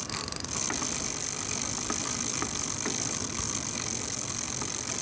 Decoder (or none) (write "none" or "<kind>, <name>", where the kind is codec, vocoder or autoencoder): none